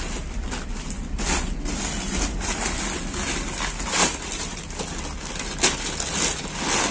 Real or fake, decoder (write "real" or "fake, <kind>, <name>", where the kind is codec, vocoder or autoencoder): real